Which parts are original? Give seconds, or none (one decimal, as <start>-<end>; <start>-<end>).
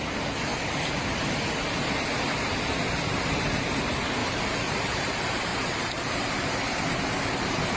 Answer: 0.0-4.2; 5.1-5.5